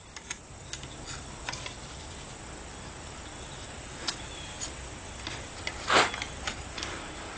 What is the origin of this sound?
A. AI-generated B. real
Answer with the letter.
B